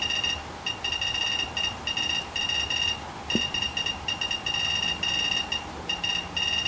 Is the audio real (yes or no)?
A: yes